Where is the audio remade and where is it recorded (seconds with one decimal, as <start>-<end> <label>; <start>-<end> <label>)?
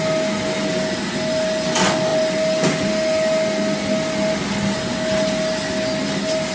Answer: 0.0-6.5 recorded